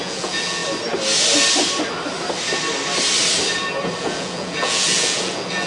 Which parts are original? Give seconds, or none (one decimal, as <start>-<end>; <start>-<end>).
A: 0.6-4.0